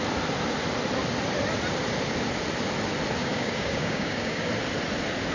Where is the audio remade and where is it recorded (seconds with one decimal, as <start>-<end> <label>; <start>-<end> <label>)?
0.0-3.2 recorded; 3.2-4.5 remade; 4.5-5.3 recorded